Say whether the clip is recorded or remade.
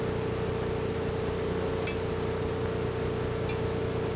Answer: recorded